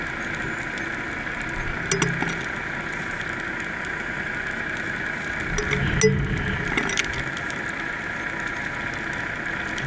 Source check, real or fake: real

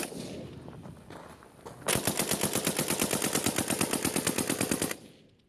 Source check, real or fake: real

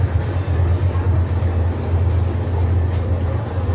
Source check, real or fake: real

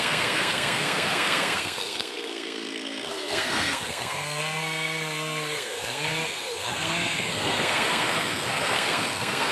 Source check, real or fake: fake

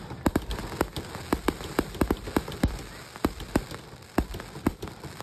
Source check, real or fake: real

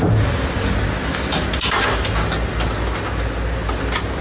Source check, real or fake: real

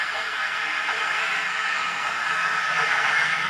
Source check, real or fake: fake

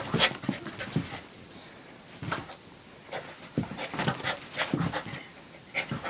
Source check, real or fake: real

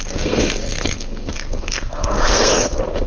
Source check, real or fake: fake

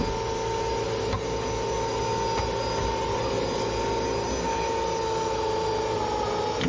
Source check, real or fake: real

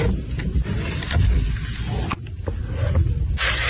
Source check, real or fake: real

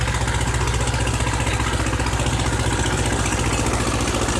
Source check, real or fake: real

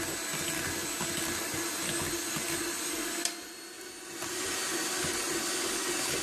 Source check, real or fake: real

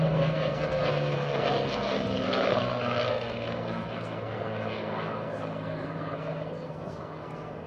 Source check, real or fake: fake